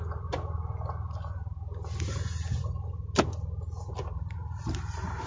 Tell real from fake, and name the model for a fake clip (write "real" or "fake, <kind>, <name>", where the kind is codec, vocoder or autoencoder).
real